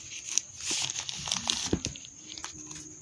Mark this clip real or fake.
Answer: real